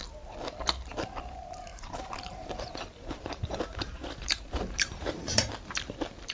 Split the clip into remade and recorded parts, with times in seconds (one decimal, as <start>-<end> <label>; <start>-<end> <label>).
0.0-1.7 recorded; 1.7-5.5 remade; 5.5-6.3 recorded